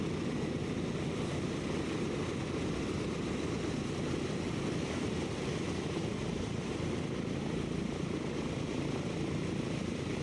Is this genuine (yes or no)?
yes